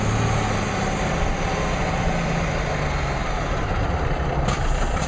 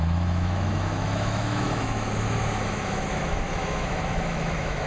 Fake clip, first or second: second